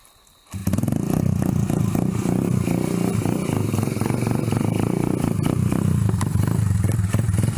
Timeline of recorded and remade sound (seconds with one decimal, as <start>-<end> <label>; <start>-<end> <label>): 0.0-7.6 recorded